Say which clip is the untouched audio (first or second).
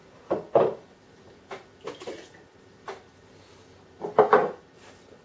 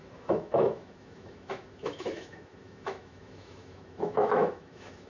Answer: first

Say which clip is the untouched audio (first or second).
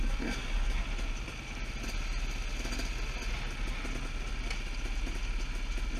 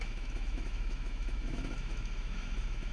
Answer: first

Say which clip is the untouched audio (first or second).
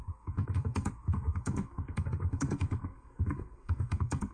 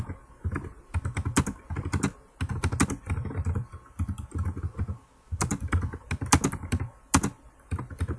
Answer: second